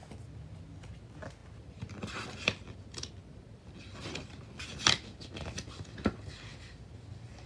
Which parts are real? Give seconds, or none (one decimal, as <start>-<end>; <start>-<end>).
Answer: 0.0-7.5